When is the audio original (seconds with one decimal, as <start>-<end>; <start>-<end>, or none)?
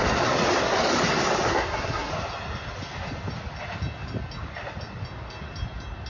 0.0-1.5; 2.1-6.1